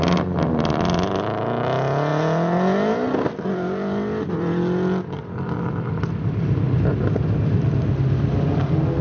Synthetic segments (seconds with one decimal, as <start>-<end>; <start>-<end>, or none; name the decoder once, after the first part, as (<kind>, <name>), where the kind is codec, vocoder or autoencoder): none